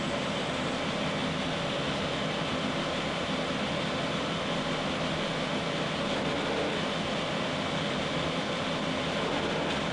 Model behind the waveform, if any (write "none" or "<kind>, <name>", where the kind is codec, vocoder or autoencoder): none